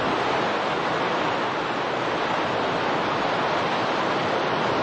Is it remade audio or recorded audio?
recorded